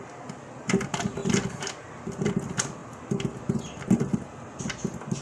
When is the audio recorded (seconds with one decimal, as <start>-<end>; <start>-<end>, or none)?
0.0-1.2; 2.3-5.2